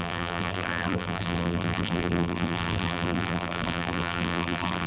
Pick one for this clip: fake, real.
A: fake